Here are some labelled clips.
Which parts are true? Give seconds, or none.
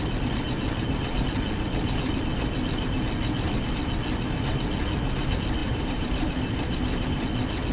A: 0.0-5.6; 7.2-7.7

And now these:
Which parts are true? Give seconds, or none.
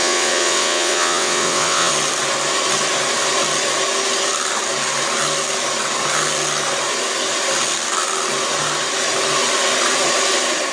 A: 1.9-10.7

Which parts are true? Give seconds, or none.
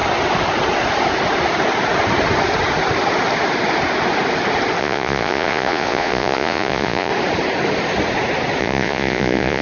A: 0.0-4.8; 7.1-8.6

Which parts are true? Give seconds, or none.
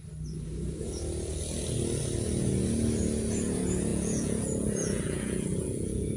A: 0.0-3.9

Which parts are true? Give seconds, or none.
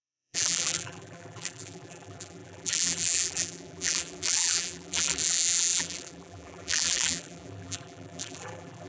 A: none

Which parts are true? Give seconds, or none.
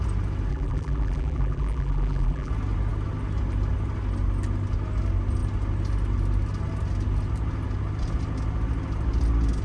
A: 0.0-0.5; 2.5-9.6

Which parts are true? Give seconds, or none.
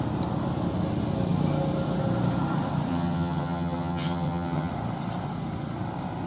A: 0.0-2.9; 4.7-6.3